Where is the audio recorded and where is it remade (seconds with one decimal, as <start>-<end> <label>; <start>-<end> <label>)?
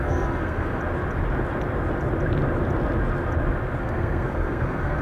0.0-0.8 remade; 0.8-3.8 recorded; 3.8-5.0 remade